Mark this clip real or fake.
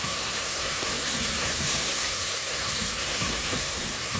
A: fake